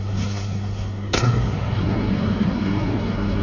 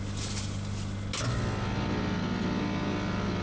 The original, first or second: second